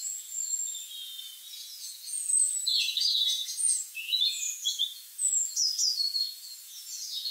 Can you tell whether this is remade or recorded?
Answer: remade